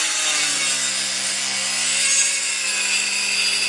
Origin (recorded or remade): recorded